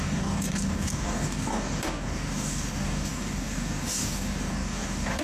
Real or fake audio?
fake